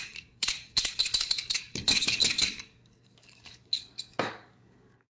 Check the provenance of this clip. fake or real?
fake